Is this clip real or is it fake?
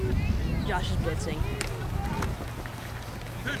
real